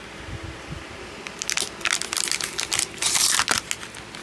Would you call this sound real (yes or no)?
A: yes